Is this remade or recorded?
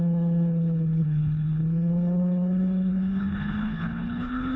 remade